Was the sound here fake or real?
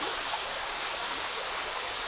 fake